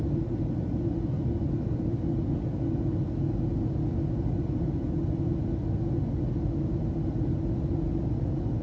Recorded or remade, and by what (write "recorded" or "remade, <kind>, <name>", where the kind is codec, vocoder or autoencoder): recorded